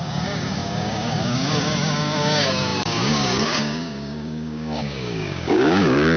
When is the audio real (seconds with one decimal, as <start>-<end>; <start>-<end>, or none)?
none